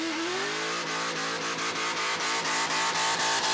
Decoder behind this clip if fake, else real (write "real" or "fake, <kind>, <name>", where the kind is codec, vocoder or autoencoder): real